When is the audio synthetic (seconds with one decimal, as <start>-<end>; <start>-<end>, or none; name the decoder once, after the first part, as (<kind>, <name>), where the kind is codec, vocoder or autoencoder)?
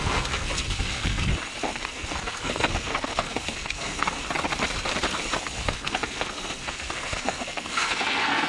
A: 0.0-1.3 (codec, SNAC); 1.8-4.2; 5.6-8.5